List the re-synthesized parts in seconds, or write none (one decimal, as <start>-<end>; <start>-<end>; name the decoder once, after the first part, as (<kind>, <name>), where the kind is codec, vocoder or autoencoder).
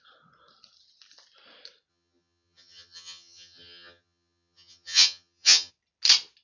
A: 1.9-5.7 (vocoder, HiFi-GAN)